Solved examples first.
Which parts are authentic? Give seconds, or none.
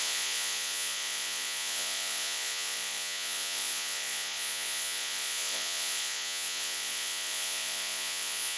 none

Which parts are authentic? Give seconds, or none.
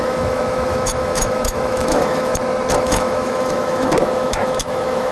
2.3-2.8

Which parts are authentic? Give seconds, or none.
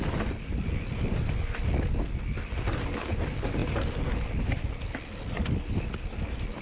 0.0-6.6